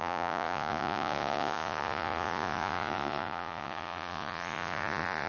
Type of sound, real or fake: fake